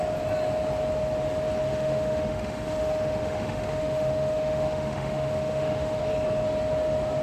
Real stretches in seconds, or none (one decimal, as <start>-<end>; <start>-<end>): 0.0-1.7; 6.0-7.2